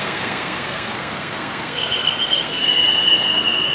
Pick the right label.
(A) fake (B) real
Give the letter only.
A